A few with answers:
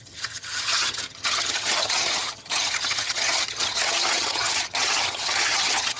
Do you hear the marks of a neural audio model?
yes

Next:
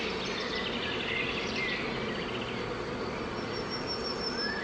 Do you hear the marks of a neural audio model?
no